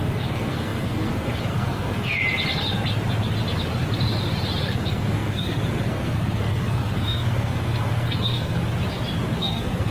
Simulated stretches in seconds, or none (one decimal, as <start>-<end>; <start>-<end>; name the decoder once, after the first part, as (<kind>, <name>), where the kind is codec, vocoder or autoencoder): 0.0-2.2 (codec, SNAC); 4.6-8.6; 9.4-9.9